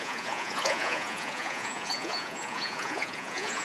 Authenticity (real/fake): fake